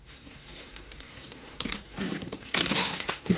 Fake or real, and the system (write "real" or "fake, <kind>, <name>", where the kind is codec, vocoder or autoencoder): fake, codec, SNAC